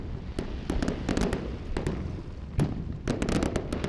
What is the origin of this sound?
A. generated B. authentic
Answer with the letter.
B